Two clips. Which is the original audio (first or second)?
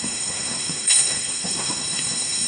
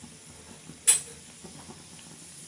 second